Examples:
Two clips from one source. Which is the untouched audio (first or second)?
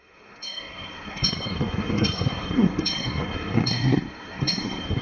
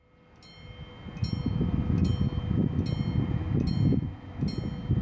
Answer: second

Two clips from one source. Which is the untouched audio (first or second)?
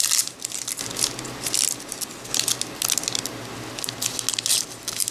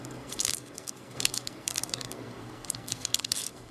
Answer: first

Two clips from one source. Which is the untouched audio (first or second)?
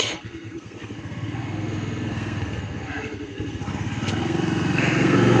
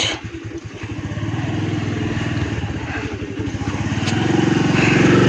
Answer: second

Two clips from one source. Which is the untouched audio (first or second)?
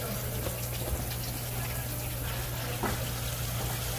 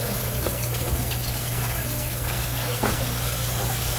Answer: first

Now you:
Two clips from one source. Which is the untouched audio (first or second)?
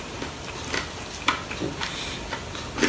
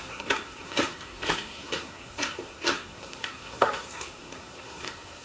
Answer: first